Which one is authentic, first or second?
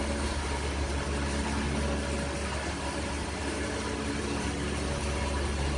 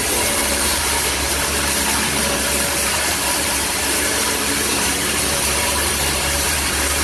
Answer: first